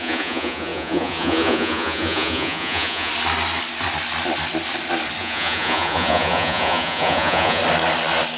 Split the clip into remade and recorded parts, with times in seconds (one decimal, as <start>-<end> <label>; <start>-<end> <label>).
0.0-3.1 remade; 3.1-5.2 recorded; 5.2-7.6 remade; 7.6-8.4 recorded